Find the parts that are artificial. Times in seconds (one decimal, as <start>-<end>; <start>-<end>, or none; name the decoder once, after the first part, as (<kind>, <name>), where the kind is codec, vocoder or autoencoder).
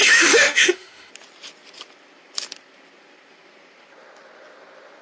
0.0-1.1 (autoencoder, DAC-VAE)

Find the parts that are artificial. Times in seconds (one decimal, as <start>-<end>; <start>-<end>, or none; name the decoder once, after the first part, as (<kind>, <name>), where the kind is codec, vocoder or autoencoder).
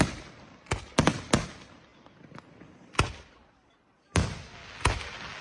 none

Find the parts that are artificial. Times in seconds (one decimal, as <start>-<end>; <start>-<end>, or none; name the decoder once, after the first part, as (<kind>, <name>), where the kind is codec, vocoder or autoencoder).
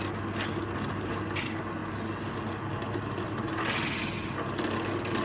none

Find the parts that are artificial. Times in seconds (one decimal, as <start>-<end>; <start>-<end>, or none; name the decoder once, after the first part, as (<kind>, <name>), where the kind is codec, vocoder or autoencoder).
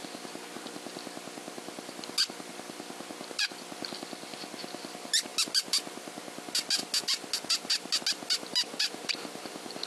none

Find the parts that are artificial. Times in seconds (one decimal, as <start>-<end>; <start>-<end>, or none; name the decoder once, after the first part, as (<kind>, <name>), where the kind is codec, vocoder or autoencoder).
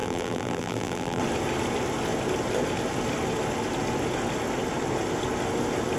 0.0-1.2 (vocoder, BigVGAN v2)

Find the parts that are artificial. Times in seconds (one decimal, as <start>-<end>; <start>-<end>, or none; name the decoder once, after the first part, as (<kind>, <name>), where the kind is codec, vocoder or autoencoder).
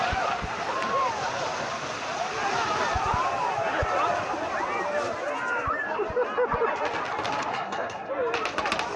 7.5-8.1 (codec, SNAC)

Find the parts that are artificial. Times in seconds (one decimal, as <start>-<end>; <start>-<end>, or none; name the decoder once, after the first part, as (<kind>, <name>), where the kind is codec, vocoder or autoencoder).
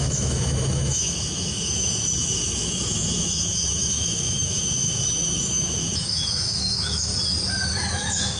0.0-7.1 (autoencoder, DAC-VAE); 7.9-8.4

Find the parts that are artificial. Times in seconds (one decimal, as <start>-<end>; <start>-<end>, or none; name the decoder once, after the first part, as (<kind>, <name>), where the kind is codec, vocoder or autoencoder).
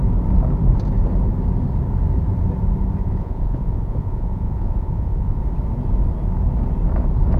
3.0-5.4 (vocoder, Vocos)